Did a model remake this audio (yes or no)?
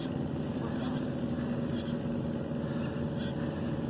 no